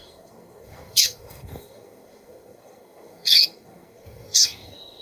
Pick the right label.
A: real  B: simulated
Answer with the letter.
B